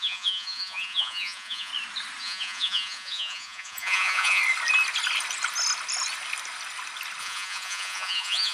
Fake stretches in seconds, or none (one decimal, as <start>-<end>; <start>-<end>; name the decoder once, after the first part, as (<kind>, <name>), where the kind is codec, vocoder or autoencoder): 0.0-1.7 (vocoder, Vocos); 2.2-4.4; 7.2-8.5